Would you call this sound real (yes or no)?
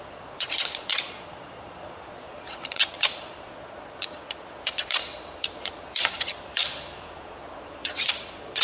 no